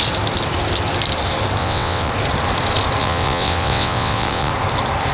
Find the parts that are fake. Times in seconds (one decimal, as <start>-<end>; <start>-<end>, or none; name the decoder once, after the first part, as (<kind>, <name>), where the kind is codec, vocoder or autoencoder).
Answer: 1.6-2.1 (vocoder, WaveNeXt); 3.0-4.5